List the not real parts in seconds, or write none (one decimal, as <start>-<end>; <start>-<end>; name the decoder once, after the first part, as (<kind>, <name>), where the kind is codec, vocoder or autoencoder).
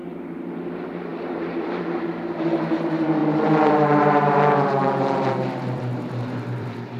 0.0-7.0 (vocoder, BigVGAN v2)